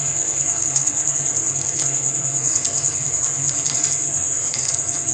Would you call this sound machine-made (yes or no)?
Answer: yes